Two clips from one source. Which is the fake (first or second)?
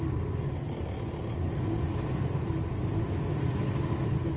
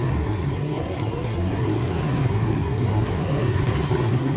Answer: second